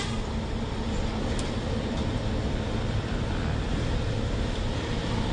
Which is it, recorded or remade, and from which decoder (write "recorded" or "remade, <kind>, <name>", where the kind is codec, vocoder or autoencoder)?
recorded